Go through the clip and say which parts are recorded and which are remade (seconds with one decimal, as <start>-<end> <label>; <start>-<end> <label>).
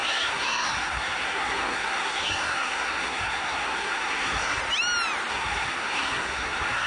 0.0-4.6 remade; 4.6-5.3 recorded; 5.3-6.9 remade